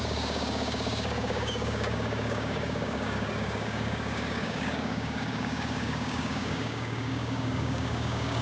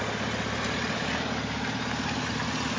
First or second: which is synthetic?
first